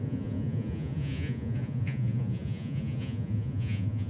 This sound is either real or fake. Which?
fake